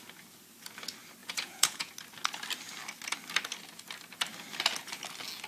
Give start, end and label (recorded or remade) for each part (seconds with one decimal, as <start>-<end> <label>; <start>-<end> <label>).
0.0-1.2 recorded; 1.2-1.9 remade; 1.9-5.5 recorded